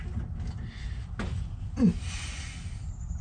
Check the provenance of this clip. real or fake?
real